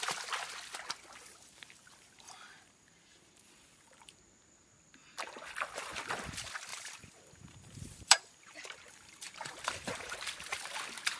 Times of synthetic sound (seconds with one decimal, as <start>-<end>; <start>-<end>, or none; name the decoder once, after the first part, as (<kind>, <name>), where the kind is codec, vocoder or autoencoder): 1.3-5.4 (vocoder, BigVGAN v2); 6.7-10.1